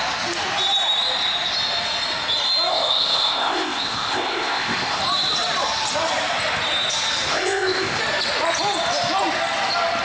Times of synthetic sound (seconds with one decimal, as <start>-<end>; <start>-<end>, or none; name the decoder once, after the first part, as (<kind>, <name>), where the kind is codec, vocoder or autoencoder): 2.7-5.0 (codec, ZipCodec); 7.3-8.0